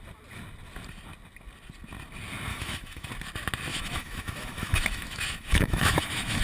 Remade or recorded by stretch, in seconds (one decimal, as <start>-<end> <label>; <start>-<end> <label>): 0.0-2.5 recorded; 2.5-3.1 remade; 3.1-3.7 recorded; 3.7-6.4 remade